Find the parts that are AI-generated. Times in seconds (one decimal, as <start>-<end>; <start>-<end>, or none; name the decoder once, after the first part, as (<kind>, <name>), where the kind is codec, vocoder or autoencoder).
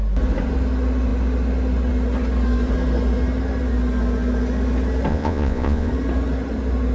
5.1-5.9 (vocoder, Vocos)